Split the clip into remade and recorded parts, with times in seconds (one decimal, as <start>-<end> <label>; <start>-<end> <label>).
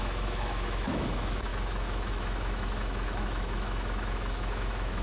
0.0-5.0 remade